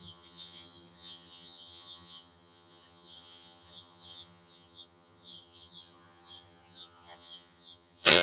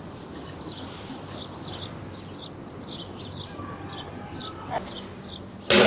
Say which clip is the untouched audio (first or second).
second